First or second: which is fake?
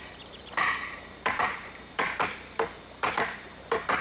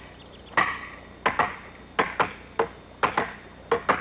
first